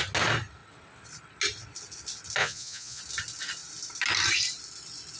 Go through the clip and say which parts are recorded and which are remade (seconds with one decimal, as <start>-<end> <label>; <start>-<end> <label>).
0.0-2.4 recorded; 2.4-3.0 remade; 3.0-5.2 recorded